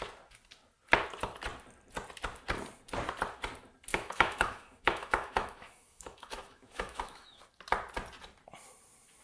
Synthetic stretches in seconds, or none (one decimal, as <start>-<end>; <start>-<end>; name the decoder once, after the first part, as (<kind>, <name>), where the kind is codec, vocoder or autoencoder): 3.9-7.4 (autoencoder, DAC-VAE)